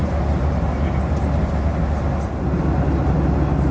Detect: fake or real real